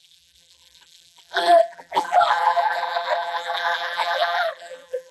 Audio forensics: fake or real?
fake